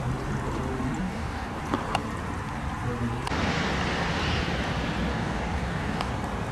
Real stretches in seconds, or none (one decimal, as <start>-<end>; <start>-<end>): 0.0-1.0; 1.6-5.1; 6.1-6.5

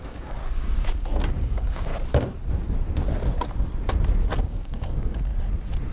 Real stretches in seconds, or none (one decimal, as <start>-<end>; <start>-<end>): 0.4-1.2; 1.9-4.4; 5.3-5.9

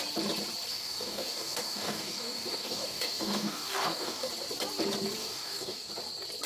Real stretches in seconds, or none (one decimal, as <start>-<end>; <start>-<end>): 0.0-0.7; 4.3-5.2; 5.9-6.5

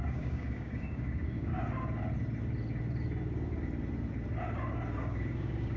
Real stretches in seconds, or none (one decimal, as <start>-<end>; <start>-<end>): 1.5-5.0